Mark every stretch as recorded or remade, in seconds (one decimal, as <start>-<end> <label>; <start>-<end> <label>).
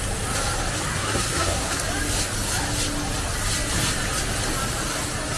0.0-0.9 recorded; 0.9-1.8 remade; 1.8-5.4 recorded